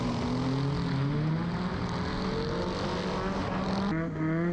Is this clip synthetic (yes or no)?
no